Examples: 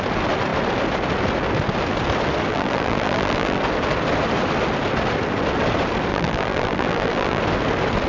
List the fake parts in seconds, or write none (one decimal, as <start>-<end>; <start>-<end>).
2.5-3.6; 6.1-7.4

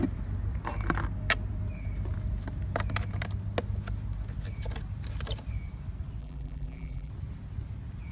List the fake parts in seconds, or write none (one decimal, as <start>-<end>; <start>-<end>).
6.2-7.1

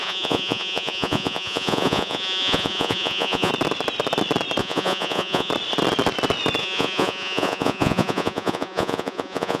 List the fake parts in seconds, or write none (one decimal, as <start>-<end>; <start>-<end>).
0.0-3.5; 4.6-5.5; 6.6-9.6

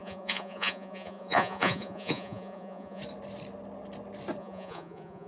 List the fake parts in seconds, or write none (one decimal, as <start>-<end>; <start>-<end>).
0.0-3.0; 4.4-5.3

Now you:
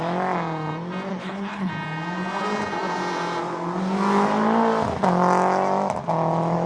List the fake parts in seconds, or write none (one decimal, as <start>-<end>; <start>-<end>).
1.1-1.7

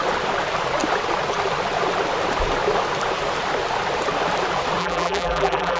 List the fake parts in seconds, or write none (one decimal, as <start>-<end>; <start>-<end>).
4.8-5.8